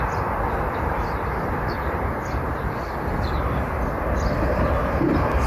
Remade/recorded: recorded